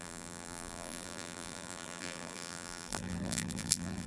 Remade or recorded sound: remade